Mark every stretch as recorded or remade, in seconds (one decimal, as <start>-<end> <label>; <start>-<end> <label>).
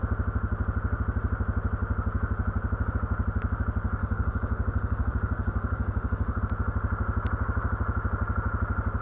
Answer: 0.0-4.0 recorded; 4.0-6.4 remade; 6.4-9.0 recorded